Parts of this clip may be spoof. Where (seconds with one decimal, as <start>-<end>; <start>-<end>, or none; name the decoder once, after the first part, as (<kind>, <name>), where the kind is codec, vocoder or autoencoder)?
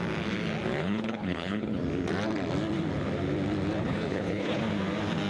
0.8-1.8 (codec, HILCodec); 3.8-4.6